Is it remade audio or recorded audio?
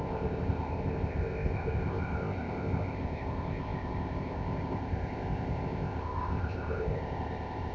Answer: remade